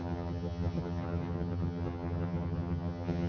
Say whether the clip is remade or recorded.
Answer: remade